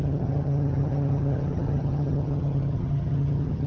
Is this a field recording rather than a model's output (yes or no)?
no